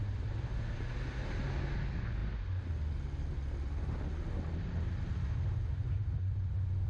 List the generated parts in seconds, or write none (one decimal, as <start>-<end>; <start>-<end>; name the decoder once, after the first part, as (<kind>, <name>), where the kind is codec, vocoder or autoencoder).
5.8-6.4 (vocoder, BigVGAN v2)